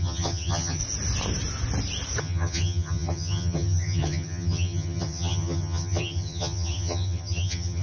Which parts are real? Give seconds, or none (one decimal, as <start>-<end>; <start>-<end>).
0.8-2.2